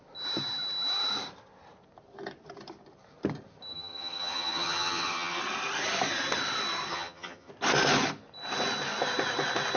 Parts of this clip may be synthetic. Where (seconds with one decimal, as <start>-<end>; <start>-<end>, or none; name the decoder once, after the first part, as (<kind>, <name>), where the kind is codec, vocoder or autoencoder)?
3.7-5.4 (vocoder, HiFi-GAN); 6.9-7.5